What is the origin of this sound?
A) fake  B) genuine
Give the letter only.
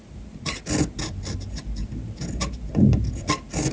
B